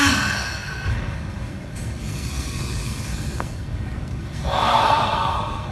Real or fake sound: fake